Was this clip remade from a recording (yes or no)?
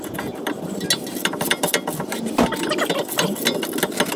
no